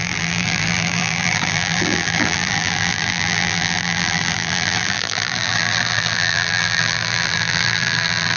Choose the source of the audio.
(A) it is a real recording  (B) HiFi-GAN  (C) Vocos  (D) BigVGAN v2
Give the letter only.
D